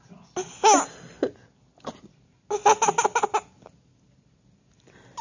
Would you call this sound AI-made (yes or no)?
no